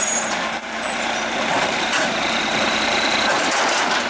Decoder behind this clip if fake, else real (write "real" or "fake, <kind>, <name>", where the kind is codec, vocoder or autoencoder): fake, vocoder, BigVGAN v2